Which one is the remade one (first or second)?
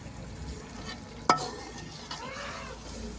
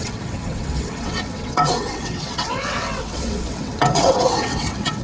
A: second